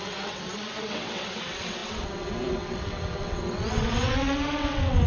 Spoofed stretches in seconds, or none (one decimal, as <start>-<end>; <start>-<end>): 0.0-5.1